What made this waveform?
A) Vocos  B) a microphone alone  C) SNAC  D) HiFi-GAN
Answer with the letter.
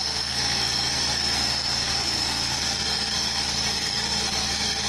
C